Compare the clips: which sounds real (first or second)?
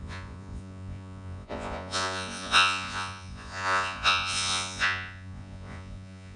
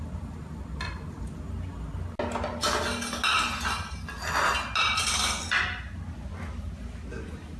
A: second